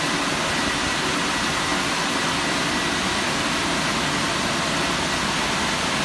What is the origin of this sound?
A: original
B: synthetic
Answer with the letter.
A